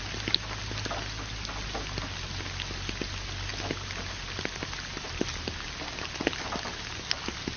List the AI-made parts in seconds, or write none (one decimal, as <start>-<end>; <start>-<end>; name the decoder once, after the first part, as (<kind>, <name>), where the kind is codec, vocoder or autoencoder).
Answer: none